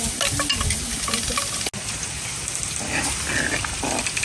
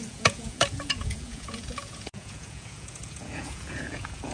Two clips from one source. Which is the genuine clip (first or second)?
first